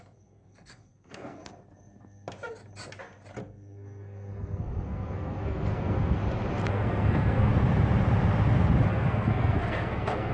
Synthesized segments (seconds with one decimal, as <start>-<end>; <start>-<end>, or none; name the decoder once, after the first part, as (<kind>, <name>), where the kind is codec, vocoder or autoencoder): 0.0-1.4 (codec, SNAC); 3.4-6.2; 6.7-7.5; 8.9-10.3